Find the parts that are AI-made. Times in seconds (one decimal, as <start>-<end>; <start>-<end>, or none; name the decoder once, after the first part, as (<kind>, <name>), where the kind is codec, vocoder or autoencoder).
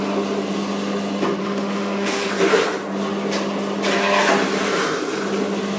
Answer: 1.4-2.3 (autoencoder, DAC-VAE)